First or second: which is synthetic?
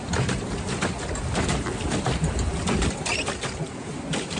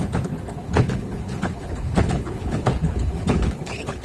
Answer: second